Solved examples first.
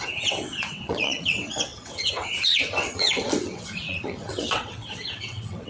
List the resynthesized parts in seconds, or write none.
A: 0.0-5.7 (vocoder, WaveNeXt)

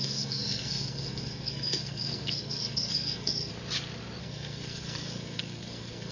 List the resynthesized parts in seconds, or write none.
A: 0.0-3.5 (codec, SNAC); 4.2-6.1

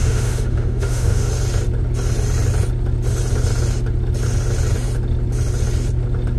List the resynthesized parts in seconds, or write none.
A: 0.0-1.3 (autoencoder, DAC-VAE)

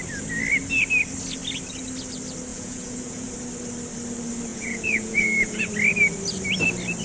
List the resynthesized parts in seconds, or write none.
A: 2.5-3.3 (vocoder, Vocos); 4.5-5.7

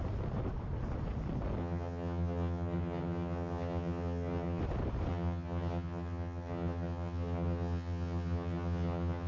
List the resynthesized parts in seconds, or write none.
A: 1.6-4.6 (vocoder, HiFi-GAN); 5.1-9.3

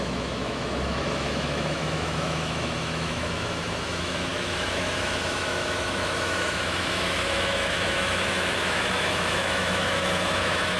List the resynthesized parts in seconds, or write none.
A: 0.0-10.8 (autoencoder, DAC-VAE)